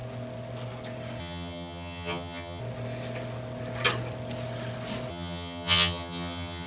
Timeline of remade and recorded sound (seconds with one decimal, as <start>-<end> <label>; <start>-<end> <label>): 0.0-1.2 recorded; 1.2-2.6 remade; 2.6-5.1 recorded; 5.1-6.7 remade